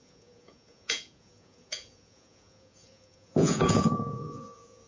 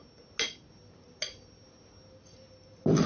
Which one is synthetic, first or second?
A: first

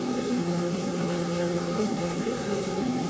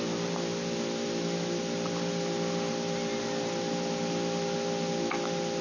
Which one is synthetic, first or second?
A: first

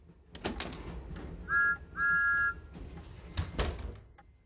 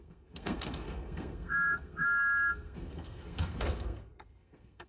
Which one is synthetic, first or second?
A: second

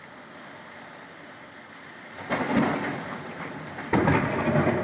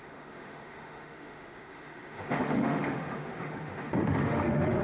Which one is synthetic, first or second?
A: second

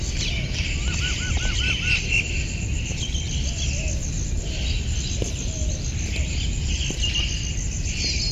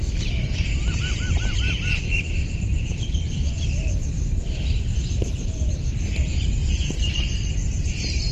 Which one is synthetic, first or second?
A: second